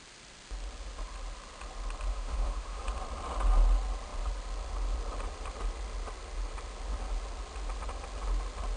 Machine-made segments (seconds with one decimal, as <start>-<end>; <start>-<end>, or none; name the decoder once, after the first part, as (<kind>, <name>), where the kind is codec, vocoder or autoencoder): 2.1-2.8 (autoencoder, DAC-VAE)